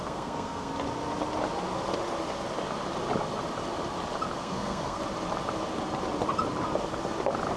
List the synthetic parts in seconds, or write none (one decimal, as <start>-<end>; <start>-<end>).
0.0-0.7; 4.4-5.0